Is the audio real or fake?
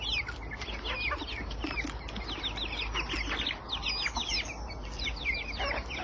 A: real